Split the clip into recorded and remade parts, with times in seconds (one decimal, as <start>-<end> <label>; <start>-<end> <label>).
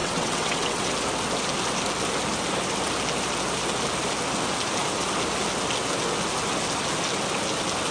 0.0-0.9 remade; 0.9-7.9 recorded